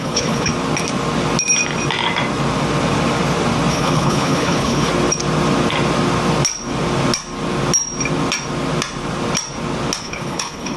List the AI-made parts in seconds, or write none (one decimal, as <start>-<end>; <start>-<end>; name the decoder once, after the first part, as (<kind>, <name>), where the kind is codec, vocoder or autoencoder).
0.0-0.5 (codec, HILCodec); 3.7-4.9; 10.0-10.8